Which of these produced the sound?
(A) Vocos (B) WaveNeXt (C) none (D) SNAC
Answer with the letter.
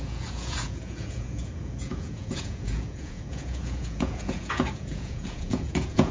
A